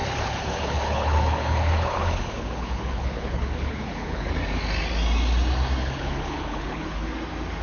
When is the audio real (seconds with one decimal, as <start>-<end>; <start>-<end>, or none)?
4.3-5.8; 7.1-7.6

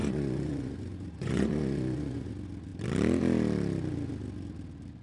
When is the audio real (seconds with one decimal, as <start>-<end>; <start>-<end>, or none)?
2.3-5.0